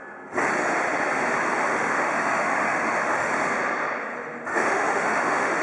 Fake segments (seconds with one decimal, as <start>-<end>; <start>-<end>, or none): 1.4-3.3; 4.5-5.6